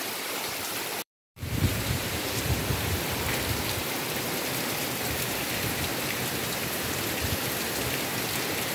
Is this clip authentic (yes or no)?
no